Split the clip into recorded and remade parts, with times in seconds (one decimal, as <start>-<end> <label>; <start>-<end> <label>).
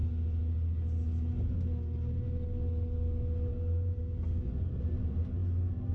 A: 0.0-5.9 recorded